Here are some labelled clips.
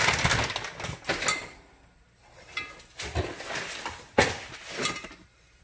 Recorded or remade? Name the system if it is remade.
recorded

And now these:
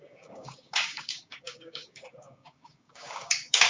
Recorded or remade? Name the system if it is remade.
remade, codec, DAC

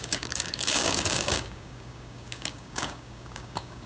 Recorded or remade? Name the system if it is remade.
remade, codec, DAC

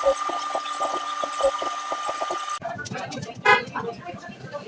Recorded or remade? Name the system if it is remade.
recorded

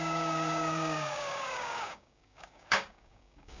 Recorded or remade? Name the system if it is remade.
remade, codec, DAC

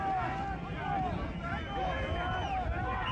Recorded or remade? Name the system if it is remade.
recorded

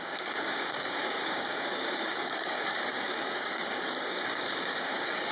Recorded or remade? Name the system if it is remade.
remade, codec, DAC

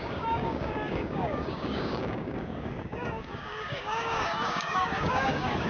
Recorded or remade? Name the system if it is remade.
remade, codec, DAC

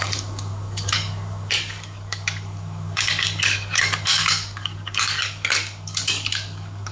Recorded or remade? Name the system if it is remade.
remade, codec, DAC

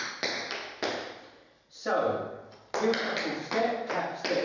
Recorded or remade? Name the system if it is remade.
recorded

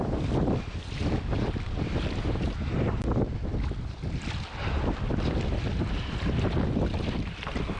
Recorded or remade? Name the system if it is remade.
recorded